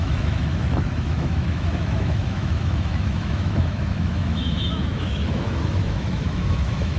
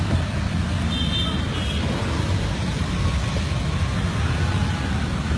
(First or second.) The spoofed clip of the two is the first